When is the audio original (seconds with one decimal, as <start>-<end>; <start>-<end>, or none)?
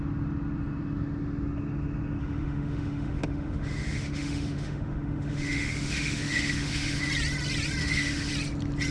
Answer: 0.0-2.2; 7.1-7.8; 8.3-8.9